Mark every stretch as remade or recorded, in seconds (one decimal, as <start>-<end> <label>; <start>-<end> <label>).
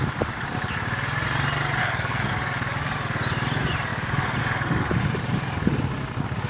0.0-1.8 recorded; 1.8-2.3 remade; 2.3-6.5 recorded